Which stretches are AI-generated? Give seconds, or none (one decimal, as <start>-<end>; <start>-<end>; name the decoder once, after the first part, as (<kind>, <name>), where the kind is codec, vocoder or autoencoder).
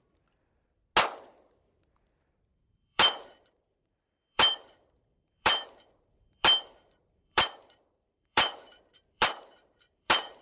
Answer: 0.0-0.8 (vocoder, BigVGAN v2); 2.5-10.4